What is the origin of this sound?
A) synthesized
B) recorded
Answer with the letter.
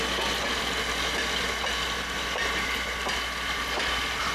B